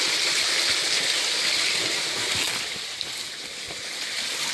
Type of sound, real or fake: real